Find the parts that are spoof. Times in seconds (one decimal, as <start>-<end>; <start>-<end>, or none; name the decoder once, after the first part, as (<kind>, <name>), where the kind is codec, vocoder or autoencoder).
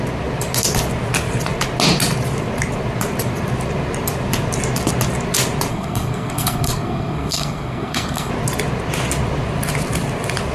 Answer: 5.7-8.3 (codec, SNAC)